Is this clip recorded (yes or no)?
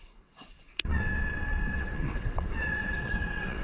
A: no